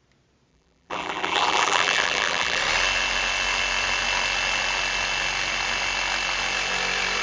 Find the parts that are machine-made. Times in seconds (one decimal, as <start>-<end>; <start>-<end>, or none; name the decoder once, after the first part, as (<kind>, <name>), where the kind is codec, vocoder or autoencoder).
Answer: 0.5-2.6 (vocoder, BigVGAN v2)